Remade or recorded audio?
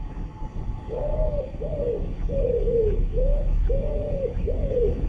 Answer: remade